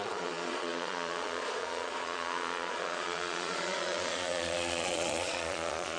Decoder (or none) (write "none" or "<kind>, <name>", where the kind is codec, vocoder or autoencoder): vocoder, Vocos